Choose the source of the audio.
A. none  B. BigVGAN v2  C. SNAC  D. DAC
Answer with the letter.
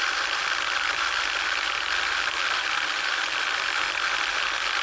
A